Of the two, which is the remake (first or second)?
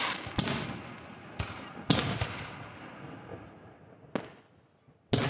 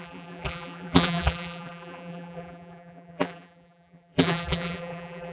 second